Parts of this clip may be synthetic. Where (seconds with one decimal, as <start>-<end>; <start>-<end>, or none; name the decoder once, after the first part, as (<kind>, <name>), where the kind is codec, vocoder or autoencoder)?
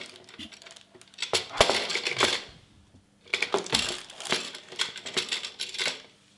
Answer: none